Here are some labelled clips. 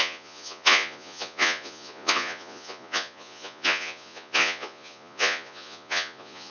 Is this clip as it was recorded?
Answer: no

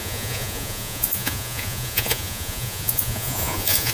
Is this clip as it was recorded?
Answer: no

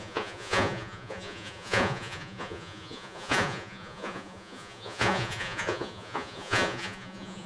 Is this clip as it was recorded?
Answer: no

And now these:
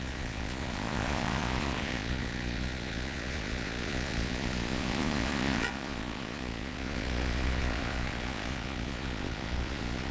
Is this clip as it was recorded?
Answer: no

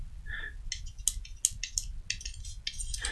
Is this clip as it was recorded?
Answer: yes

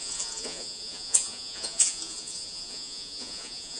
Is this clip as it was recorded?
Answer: no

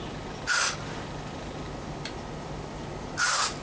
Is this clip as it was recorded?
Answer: yes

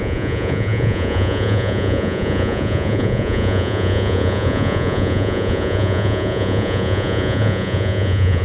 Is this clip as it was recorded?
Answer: no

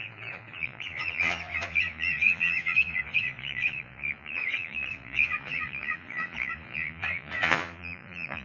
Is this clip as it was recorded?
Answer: no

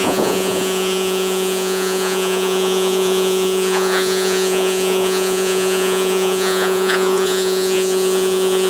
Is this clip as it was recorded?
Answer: no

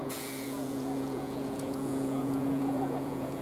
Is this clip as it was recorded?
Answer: no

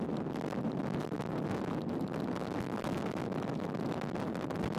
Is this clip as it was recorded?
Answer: yes